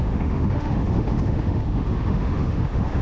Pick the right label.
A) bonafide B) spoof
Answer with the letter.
B